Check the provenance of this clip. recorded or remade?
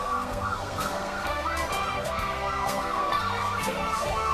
remade